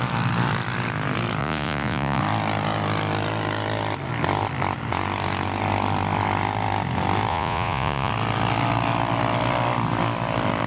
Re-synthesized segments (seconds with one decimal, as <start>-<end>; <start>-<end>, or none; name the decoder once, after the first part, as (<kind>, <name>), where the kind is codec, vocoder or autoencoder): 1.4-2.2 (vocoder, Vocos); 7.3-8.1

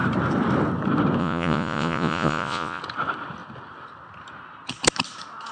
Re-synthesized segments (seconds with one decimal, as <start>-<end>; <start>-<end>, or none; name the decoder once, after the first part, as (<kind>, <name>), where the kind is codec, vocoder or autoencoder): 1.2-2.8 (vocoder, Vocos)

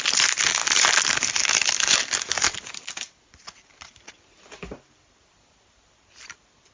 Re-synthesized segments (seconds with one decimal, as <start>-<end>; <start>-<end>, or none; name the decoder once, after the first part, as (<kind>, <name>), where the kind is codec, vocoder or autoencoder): none